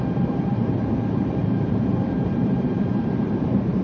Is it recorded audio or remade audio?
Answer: remade